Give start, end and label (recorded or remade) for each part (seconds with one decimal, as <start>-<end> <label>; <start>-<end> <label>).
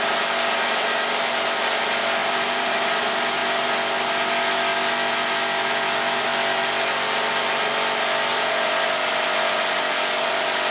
0.0-2.2 recorded; 2.2-2.7 remade; 2.7-8.3 recorded; 8.3-9.5 remade; 9.5-10.7 recorded